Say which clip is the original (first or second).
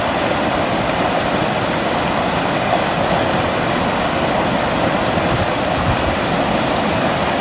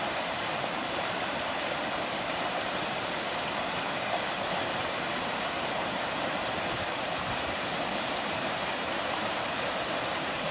first